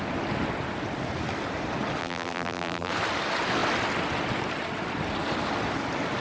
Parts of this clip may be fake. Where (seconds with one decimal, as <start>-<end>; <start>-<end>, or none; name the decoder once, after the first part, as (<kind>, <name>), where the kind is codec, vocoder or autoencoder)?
2.0-2.9 (vocoder, BigVGAN v2)